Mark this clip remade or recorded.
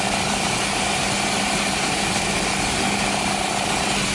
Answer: recorded